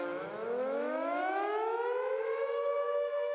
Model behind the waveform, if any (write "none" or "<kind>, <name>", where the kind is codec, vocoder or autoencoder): autoencoder, DAC-VAE